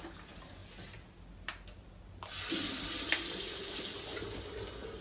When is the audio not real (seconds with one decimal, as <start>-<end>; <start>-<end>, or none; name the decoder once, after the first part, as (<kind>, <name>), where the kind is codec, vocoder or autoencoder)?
none